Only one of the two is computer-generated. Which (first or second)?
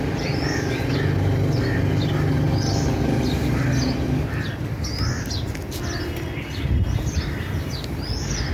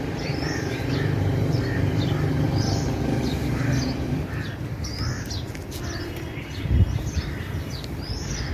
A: second